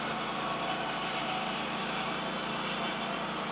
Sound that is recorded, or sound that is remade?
recorded